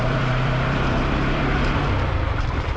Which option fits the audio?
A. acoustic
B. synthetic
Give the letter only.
B